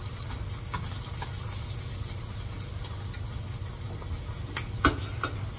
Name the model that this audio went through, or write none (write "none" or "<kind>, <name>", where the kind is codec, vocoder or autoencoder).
none